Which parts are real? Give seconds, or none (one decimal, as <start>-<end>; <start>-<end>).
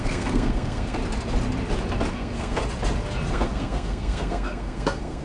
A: 1.0-2.1; 2.6-3.3